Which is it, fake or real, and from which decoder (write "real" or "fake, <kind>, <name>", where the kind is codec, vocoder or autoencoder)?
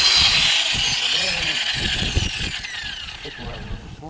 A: fake, vocoder, Vocos